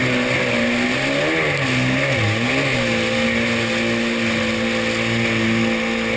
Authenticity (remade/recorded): recorded